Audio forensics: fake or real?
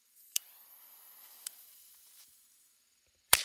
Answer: fake